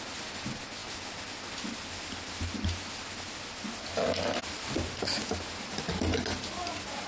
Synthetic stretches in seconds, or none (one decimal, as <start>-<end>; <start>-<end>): none